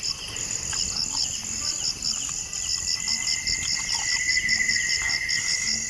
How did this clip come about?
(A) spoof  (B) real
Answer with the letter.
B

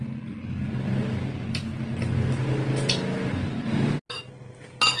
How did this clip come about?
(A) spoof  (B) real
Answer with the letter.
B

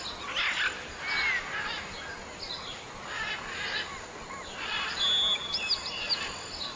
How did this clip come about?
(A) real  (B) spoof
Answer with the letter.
A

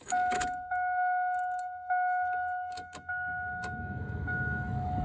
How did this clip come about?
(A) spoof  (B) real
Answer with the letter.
A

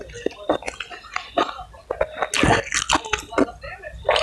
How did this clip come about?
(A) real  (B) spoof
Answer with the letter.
A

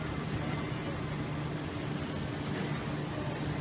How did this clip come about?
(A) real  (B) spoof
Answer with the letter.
A